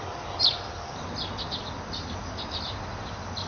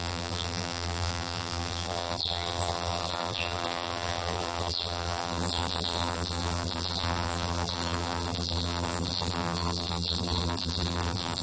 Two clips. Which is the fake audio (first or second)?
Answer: second